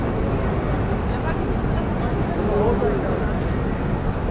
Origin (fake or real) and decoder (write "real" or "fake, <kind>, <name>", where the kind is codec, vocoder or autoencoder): real